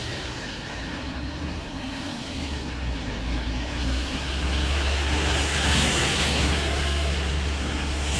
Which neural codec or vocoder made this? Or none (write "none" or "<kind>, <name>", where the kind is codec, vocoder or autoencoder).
codec, SNAC